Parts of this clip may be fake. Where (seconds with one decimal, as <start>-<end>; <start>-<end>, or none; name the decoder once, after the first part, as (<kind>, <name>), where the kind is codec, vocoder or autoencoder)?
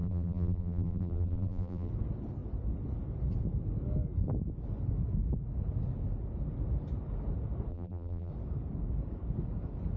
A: 0.0-1.9 (vocoder, BigVGAN v2); 7.7-8.3